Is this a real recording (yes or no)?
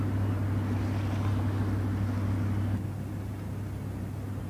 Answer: yes